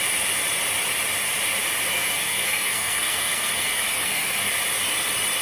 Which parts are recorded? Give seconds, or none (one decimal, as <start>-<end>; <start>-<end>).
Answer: 0.0-1.9; 4.5-5.4

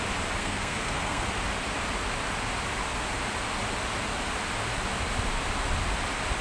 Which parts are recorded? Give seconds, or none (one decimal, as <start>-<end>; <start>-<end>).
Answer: 0.0-0.4; 1.3-6.4

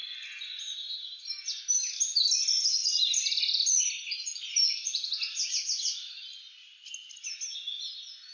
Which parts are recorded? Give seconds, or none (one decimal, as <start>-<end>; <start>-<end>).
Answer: 0.0-8.3

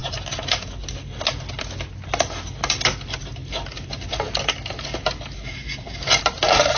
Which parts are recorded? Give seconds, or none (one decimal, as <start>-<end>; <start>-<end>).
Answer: 0.0-6.8

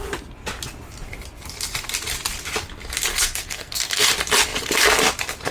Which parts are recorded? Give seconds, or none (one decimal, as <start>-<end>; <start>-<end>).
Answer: 0.0-3.1; 4.1-5.5

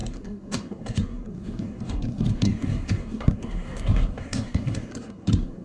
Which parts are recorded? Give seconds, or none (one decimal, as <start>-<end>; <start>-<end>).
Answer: none

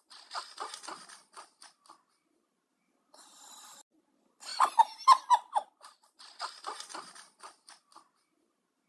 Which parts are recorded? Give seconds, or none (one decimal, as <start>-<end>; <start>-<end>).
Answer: 0.0-8.9